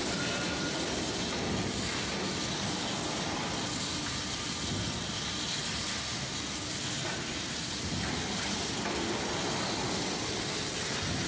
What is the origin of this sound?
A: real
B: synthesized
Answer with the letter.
A